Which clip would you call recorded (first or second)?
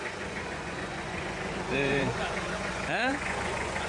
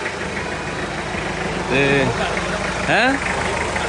second